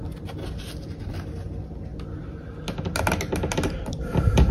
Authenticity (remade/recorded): recorded